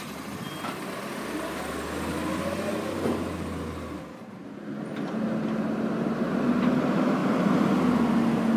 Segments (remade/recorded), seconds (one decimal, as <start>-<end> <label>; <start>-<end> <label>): 0.0-8.6 recorded

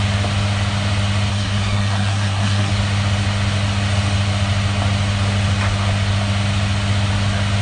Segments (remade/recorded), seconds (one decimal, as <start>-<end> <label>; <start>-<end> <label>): 0.0-1.3 recorded; 1.3-2.7 remade; 2.7-7.6 recorded